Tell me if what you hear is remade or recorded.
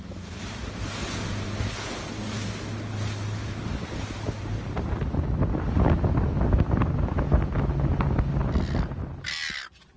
recorded